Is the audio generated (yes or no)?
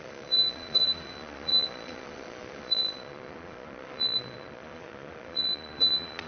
yes